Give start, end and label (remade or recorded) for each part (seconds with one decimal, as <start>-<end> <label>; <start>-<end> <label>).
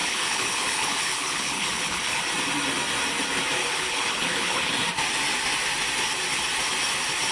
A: 0.0-2.2 remade; 2.2-3.6 recorded; 3.6-4.7 remade; 4.7-7.3 recorded